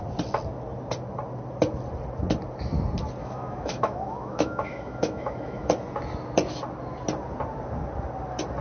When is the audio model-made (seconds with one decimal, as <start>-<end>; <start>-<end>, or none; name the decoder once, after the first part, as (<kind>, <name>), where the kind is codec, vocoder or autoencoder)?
3.2-5.7 (autoencoder, DAC-VAE)